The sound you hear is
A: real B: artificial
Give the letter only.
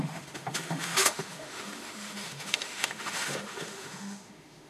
B